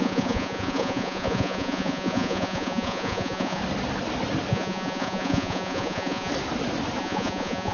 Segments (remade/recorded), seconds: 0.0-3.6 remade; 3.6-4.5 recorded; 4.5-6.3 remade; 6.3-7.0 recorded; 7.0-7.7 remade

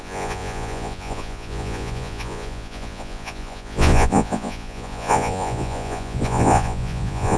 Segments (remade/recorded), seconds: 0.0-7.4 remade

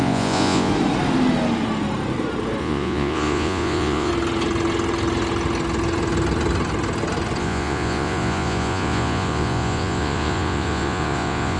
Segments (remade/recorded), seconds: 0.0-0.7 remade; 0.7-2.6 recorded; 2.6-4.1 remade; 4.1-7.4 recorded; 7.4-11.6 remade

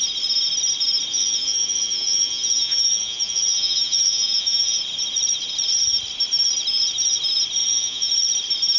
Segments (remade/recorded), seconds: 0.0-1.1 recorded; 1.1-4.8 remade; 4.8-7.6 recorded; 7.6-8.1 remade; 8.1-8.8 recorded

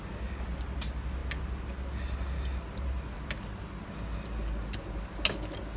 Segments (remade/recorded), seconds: 0.0-5.8 recorded

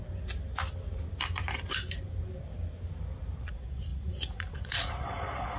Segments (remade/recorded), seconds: 0.0-3.4 recorded; 3.4-5.6 remade